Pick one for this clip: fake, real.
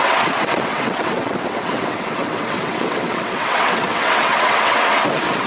fake